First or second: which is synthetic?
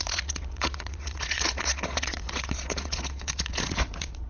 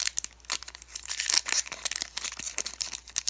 first